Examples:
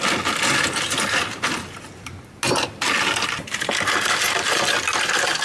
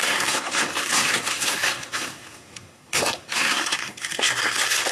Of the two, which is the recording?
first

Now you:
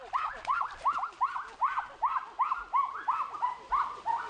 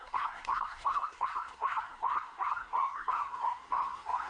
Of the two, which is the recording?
first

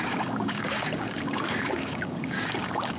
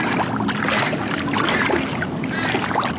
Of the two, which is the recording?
second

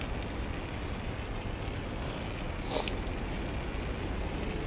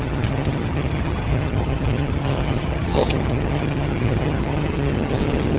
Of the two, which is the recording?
first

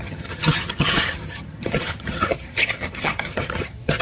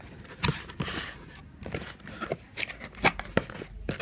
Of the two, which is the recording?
second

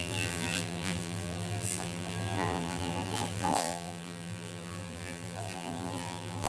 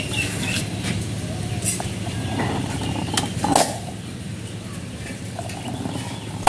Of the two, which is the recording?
second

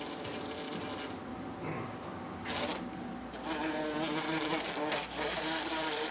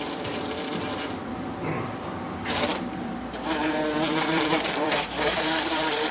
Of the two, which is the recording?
first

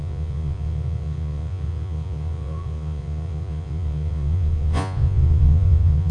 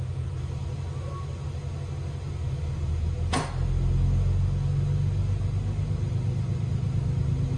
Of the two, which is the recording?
second